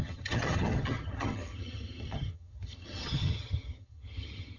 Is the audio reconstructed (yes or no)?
yes